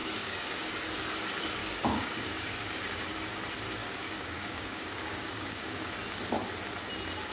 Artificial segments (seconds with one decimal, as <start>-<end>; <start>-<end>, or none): 0.0-0.7; 1.6-3.4; 3.8-5.9